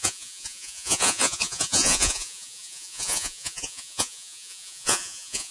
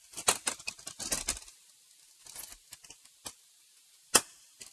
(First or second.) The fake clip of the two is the first